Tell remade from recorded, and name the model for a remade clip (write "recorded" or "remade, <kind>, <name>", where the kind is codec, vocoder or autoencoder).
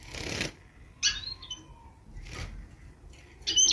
recorded